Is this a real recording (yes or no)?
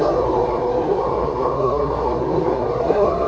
no